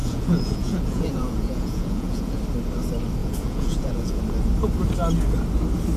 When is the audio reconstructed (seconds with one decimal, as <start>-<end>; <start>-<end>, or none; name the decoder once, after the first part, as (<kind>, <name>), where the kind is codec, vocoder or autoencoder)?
0.0-2.4 (vocoder, Vocos); 3.2-4.2